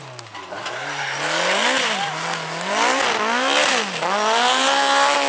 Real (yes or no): yes